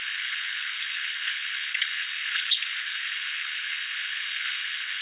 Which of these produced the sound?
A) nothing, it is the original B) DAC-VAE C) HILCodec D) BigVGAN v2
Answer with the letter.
C